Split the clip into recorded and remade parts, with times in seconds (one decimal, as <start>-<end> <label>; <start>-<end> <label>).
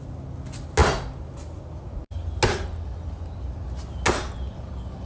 0.0-5.1 recorded